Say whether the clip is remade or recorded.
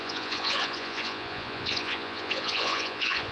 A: remade